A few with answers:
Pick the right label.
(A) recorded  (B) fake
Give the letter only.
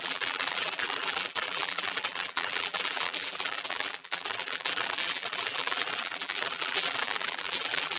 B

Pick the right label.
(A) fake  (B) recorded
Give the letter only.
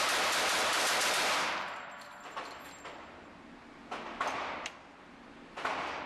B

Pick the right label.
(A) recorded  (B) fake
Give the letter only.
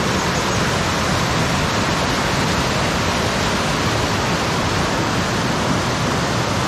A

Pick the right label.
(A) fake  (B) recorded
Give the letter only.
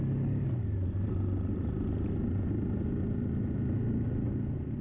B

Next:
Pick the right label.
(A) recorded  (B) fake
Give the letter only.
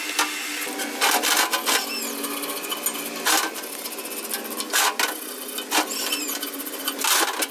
A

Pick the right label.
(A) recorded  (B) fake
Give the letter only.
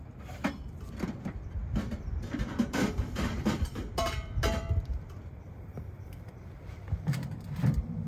B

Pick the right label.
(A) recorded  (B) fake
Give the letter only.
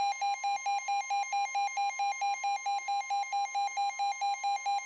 A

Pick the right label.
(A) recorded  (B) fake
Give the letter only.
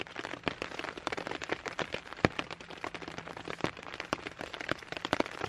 B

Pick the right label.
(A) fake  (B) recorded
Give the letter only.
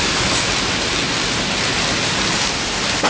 A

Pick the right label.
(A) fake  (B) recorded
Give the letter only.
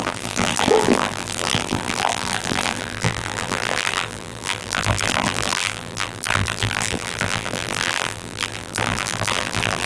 A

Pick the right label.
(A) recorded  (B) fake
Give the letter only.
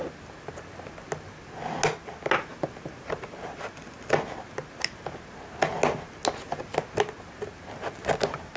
A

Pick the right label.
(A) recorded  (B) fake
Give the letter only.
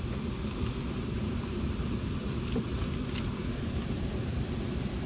A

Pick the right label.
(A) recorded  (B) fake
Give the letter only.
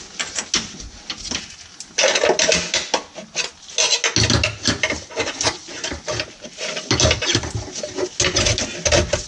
A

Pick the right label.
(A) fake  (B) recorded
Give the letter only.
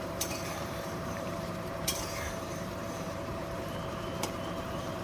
A